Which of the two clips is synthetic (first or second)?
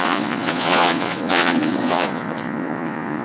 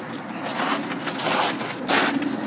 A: first